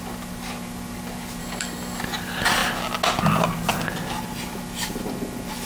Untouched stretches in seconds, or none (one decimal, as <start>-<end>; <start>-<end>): 0.0-1.4; 2.0-5.7